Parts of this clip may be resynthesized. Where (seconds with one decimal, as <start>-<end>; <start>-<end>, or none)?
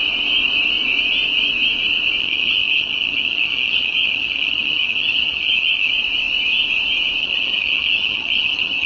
2.2-5.9; 7.2-8.9